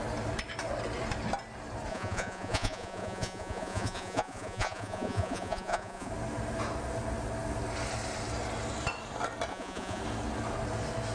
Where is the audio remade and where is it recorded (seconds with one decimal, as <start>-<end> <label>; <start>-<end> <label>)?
0.0-1.9 recorded; 1.9-6.1 remade; 6.1-9.5 recorded; 9.5-10.0 remade; 10.0-11.1 recorded